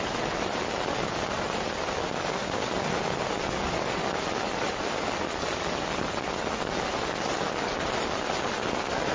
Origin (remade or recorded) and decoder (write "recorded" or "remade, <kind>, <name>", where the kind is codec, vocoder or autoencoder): recorded